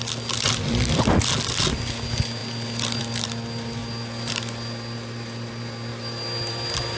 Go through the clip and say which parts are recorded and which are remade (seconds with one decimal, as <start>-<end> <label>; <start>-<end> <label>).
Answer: 0.0-7.0 recorded